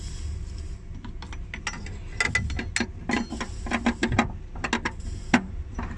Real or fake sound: real